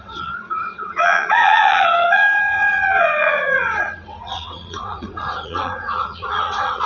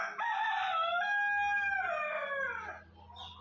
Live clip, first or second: second